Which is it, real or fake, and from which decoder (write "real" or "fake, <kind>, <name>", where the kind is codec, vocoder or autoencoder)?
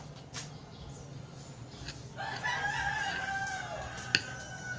real